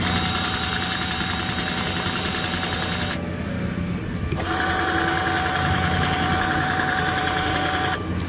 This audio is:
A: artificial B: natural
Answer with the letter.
B